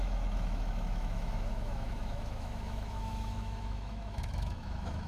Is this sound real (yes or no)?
no